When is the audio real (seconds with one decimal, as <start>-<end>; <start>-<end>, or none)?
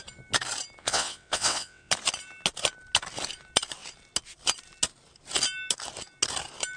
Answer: 0.0-0.8; 1.9-6.8